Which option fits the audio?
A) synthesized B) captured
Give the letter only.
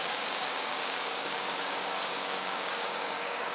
A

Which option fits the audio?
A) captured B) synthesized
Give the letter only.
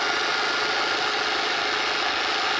A